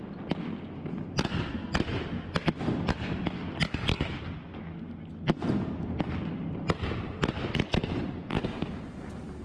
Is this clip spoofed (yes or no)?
no